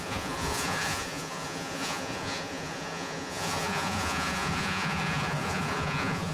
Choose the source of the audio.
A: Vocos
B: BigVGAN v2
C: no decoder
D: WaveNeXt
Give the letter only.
A